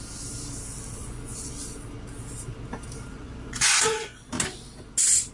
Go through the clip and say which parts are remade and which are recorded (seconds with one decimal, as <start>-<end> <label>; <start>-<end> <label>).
0.0-1.0 recorded; 1.0-1.5 remade; 1.5-3.1 recorded; 3.1-4.3 remade; 4.3-5.3 recorded